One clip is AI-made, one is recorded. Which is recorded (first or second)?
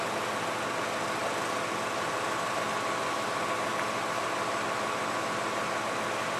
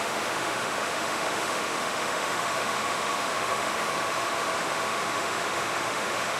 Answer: first